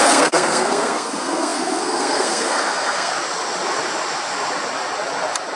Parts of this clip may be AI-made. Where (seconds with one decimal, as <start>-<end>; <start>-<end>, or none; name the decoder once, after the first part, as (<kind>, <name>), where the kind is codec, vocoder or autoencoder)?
0.0-3.1 (codec, SNAC)